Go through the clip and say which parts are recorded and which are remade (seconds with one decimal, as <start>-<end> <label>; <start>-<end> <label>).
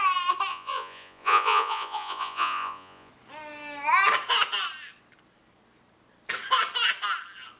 0.0-0.5 recorded; 0.5-3.1 remade; 3.1-7.6 recorded